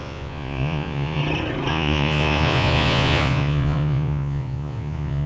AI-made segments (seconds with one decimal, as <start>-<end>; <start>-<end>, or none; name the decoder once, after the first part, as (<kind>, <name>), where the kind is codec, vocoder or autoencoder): 0.0-1.2 (vocoder, Vocos); 1.7-5.3